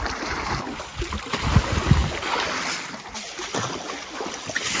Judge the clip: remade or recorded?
recorded